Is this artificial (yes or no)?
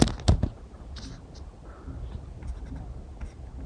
no